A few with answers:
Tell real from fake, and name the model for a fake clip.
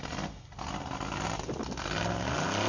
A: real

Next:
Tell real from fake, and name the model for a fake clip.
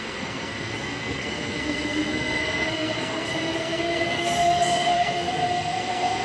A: fake, codec, SNAC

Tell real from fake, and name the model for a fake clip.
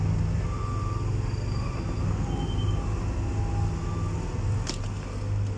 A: real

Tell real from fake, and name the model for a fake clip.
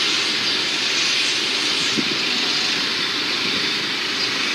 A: real